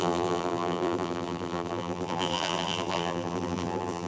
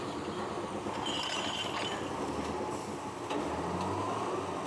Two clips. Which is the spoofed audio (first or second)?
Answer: first